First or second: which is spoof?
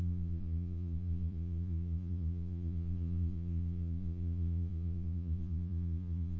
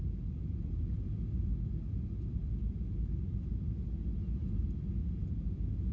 first